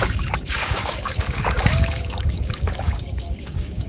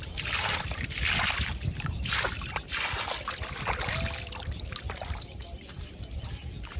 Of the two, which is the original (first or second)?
second